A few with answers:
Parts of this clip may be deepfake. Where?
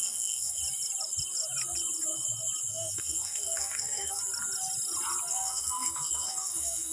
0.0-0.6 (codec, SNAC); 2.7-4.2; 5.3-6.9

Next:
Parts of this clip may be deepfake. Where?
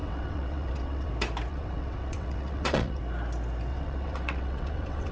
0.0-1.1 (vocoder, WaveNeXt); 1.5-3.0; 3.7-5.1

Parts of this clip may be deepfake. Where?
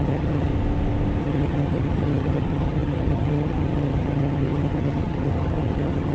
0.0-0.5 (vocoder, HiFi-GAN); 1.2-6.1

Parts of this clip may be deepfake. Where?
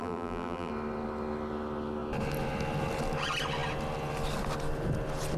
0.0-0.7 (vocoder, BigVGAN v2)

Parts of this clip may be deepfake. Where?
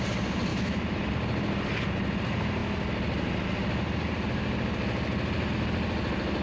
0.5-1.1 (autoencoder, DAC-VAE)